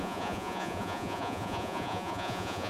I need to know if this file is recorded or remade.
remade